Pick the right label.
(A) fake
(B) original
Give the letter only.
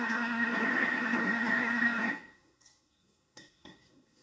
A